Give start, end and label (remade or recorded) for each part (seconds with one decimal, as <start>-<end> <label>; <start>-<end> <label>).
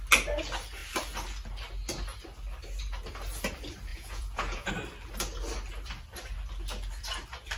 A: 0.0-3.9 recorded; 3.9-4.7 remade; 4.7-7.6 recorded